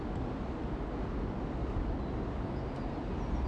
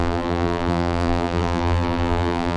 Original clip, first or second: first